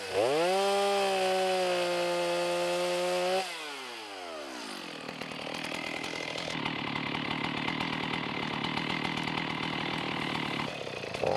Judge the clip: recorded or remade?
recorded